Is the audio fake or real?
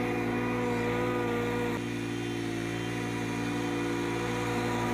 real